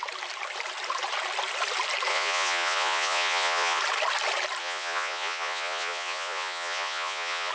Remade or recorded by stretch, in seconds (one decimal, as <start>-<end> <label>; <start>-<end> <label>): 0.0-2.1 recorded; 2.1-3.8 remade; 3.8-4.6 recorded; 4.6-7.5 remade

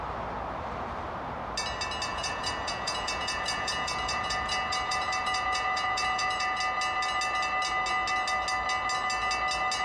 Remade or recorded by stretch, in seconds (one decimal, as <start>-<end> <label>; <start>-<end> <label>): 0.0-2.1 recorded; 2.1-6.6 remade; 6.6-9.8 recorded

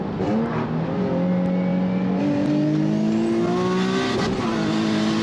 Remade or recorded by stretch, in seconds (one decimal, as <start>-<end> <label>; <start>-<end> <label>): 0.0-5.2 recorded

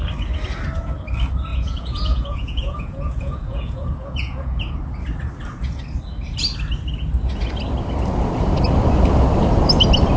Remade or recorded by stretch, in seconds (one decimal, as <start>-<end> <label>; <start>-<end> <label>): 0.0-1.5 recorded; 1.5-4.6 remade; 4.6-10.2 recorded